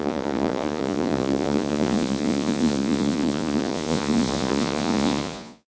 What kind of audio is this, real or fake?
fake